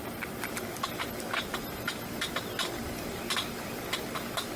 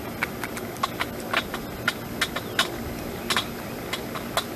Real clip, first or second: second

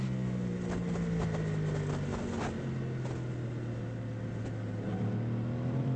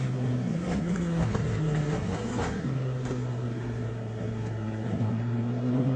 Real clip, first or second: first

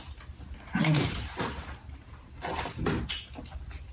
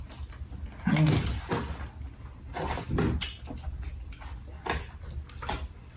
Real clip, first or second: second